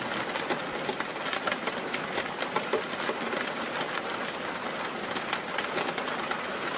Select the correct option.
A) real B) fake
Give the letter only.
A